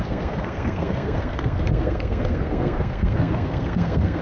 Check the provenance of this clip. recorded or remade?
remade